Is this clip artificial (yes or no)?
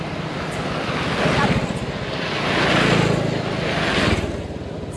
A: no